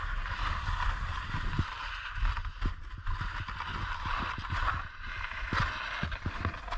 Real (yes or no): yes